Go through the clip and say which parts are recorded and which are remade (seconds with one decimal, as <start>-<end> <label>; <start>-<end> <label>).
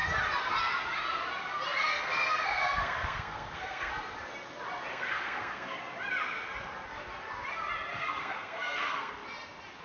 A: 0.0-1.8 recorded; 1.8-3.9 remade; 3.9-4.9 recorded; 4.9-5.8 remade; 5.8-7.9 recorded; 7.9-9.1 remade; 9.1-9.8 recorded